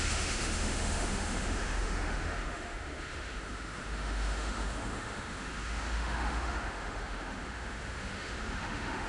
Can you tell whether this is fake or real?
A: fake